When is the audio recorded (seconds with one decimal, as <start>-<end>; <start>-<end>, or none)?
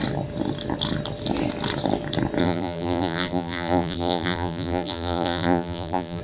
0.0-2.4